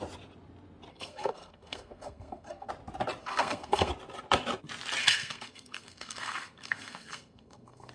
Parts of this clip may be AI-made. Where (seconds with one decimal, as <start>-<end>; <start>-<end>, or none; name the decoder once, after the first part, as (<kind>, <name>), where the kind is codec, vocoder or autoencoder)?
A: 0.9-2.7 (codec, SNAC); 3.2-3.9; 5.0-7.9

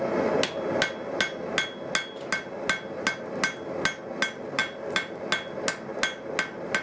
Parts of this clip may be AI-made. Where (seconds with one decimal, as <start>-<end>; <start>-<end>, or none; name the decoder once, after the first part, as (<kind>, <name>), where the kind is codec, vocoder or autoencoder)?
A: none

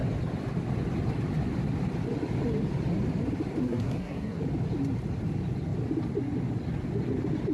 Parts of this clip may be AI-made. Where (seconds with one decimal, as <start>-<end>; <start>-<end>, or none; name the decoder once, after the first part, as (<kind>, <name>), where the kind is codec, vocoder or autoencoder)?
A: 3.6-4.4 (codec, SNAC)

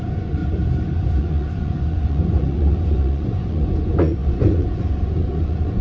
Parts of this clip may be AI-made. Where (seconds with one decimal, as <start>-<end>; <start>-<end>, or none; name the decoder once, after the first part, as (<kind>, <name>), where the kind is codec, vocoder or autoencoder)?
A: 0.0-0.4 (vocoder, Vocos); 1.2-5.8

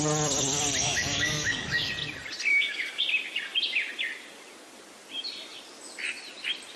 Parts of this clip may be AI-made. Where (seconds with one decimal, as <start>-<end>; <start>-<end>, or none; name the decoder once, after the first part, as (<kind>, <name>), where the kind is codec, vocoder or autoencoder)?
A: 0.8-1.9 (codec, DAC); 2.5-3.0

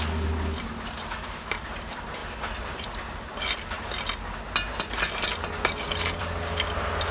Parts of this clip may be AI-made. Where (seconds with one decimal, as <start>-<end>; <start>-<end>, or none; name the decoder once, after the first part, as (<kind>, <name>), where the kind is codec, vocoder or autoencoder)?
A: none